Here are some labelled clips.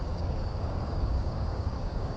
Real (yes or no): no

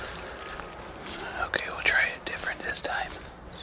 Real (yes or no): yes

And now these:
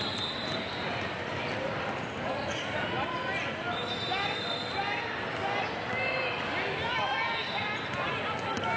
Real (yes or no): yes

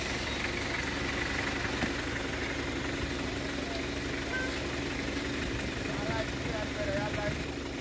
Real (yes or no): yes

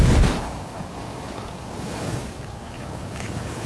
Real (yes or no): no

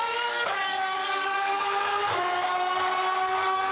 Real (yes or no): no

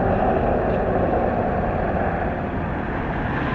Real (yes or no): yes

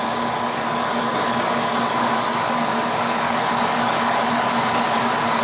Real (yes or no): no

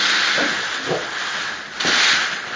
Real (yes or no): yes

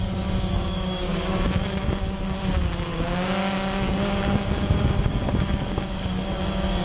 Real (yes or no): no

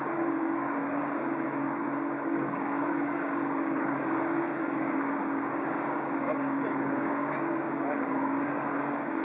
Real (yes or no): no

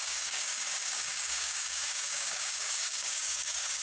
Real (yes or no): no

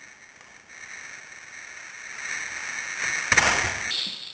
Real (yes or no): yes